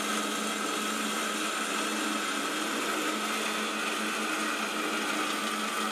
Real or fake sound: real